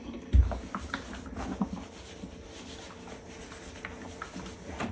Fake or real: real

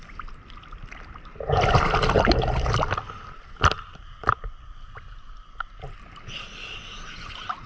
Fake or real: real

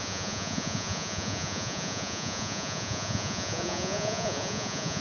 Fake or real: fake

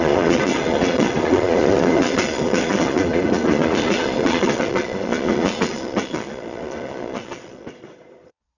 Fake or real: fake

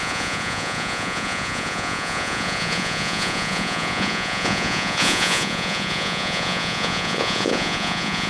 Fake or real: fake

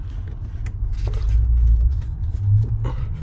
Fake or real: real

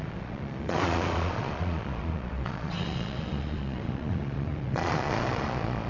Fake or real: fake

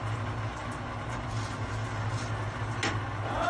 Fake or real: real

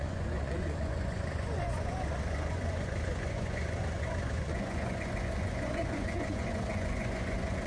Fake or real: fake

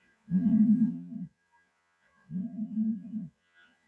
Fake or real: fake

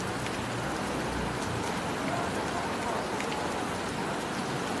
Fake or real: real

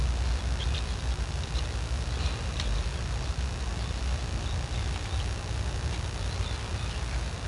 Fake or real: real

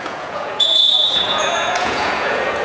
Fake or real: fake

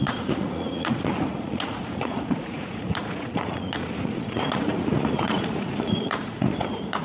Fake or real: fake